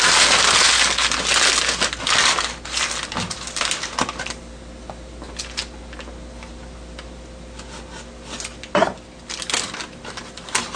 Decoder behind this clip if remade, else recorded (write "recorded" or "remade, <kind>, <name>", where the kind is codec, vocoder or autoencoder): recorded